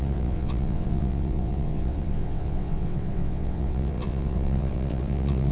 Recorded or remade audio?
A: remade